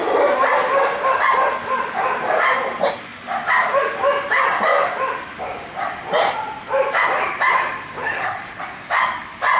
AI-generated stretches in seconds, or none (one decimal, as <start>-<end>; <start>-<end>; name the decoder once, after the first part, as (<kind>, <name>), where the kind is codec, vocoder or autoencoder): 8.0-8.6 (codec, HILCodec)